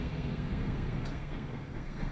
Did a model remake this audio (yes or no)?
yes